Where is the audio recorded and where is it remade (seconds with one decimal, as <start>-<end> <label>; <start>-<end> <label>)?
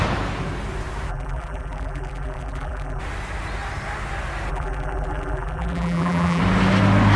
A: 0.0-1.1 recorded; 1.1-3.0 remade; 3.0-4.5 recorded; 4.5-6.4 remade; 6.4-7.2 recorded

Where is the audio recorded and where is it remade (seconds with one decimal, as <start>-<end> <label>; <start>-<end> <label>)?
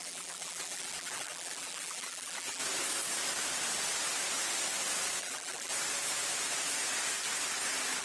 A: 0.0-2.6 remade; 2.6-5.2 recorded; 5.2-5.7 remade; 5.7-8.0 recorded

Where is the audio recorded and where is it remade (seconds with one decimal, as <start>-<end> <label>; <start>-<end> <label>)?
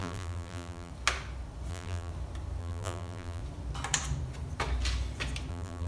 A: 0.0-0.9 remade; 0.9-1.7 recorded; 1.7-2.1 remade; 2.1-2.6 recorded; 2.6-3.4 remade; 3.4-5.5 recorded; 5.5-5.9 remade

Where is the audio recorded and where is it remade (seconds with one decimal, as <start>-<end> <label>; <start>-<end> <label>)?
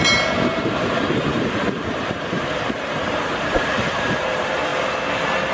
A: 0.0-4.7 remade; 4.7-5.5 recorded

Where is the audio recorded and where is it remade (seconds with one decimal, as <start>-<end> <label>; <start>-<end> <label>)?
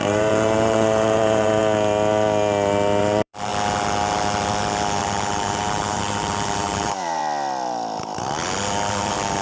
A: 0.0-1.6 remade; 1.6-3.0 recorded; 3.0-3.5 remade; 3.5-5.0 recorded; 5.0-7.2 remade; 7.2-8.9 recorded; 8.9-9.4 remade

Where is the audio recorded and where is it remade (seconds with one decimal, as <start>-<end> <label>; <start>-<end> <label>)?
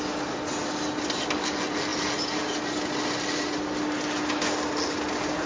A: 0.0-5.5 recorded